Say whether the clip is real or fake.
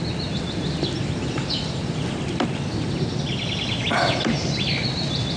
real